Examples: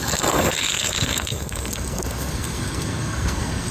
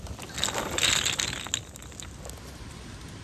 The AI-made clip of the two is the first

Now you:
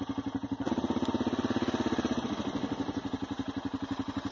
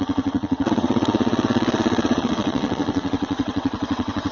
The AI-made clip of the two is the second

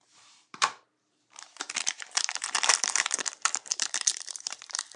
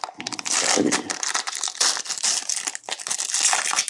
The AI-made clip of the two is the first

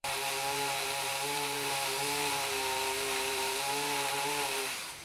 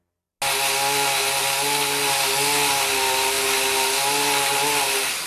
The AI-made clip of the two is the first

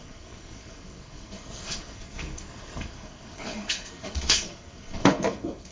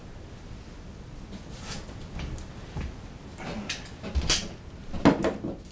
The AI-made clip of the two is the first